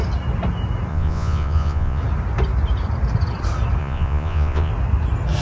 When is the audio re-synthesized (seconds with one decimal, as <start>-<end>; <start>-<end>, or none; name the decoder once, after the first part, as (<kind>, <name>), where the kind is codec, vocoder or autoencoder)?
0.9-2.0 (vocoder, Vocos); 3.8-4.7